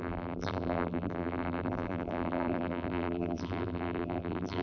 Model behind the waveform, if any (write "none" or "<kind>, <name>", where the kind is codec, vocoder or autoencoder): vocoder, BigVGAN v2